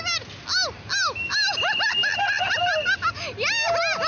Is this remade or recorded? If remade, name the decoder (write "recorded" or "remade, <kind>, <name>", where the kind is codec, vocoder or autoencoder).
recorded